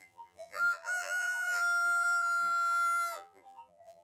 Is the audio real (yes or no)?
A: no